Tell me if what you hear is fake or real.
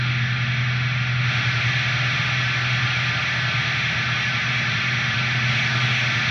real